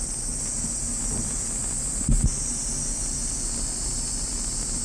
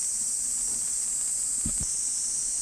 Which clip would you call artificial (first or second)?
second